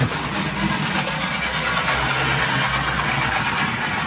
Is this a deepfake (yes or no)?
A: no